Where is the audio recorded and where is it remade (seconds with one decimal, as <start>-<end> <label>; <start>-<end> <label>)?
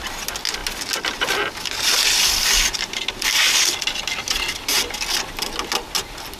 0.0-6.4 recorded